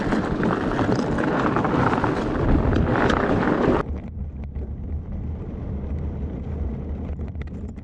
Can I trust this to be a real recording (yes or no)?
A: yes